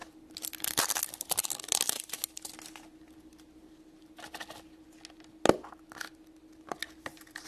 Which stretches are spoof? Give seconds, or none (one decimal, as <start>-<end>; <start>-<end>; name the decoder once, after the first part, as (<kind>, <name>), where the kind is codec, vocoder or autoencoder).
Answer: none